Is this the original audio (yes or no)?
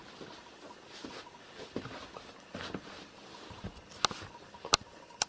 yes